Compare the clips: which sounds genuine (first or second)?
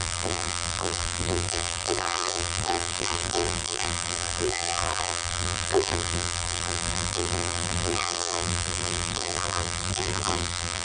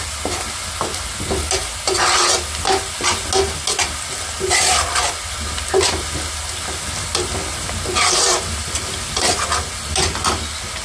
second